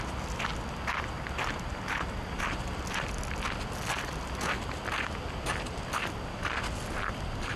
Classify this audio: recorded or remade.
recorded